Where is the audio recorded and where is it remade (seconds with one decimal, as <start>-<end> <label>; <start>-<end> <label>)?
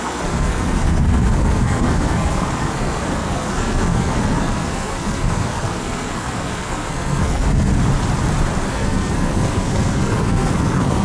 0.0-7.7 remade; 7.7-8.7 recorded; 8.7-11.0 remade